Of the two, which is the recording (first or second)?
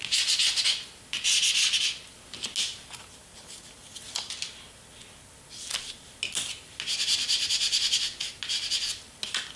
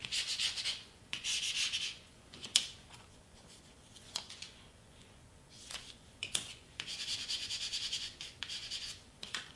first